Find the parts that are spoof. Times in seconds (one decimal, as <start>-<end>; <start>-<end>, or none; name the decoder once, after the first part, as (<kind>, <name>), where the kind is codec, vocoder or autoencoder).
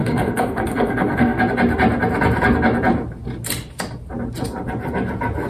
0.0-1.4 (codec, SNAC)